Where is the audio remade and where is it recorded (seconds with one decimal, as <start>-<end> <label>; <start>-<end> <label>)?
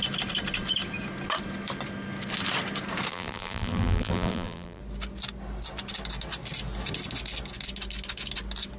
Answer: 0.0-3.1 recorded; 3.1-4.8 remade; 4.8-8.8 recorded